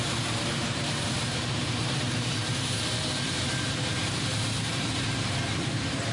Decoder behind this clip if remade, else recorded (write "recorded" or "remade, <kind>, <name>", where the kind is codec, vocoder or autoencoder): remade, vocoder, BigVGAN v2